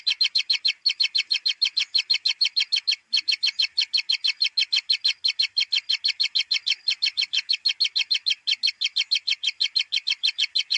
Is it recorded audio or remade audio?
recorded